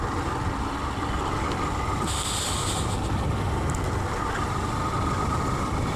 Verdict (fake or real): real